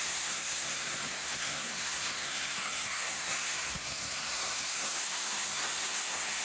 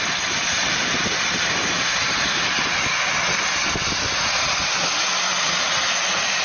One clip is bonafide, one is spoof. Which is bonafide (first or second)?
second